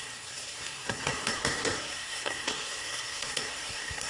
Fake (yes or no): yes